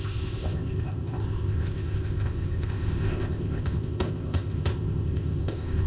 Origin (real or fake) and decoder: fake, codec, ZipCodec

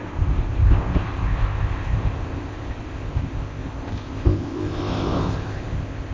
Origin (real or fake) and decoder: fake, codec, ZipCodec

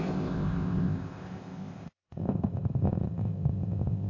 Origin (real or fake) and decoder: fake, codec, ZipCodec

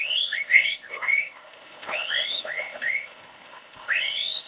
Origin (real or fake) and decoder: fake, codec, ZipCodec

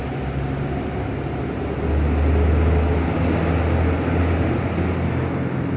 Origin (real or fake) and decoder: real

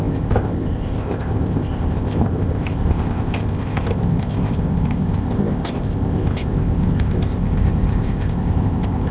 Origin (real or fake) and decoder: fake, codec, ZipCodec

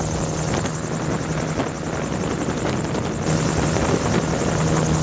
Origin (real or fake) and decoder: real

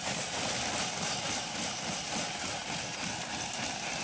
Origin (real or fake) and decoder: real